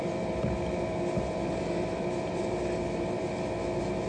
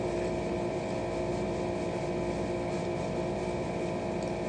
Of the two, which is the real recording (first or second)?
second